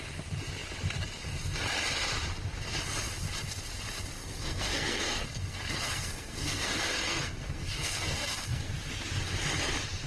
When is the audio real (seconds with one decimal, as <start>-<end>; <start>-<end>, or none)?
0.0-4.2; 8.7-10.1